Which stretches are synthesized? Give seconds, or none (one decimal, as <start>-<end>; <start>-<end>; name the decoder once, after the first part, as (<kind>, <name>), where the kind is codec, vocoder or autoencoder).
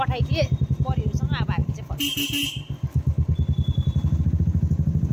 none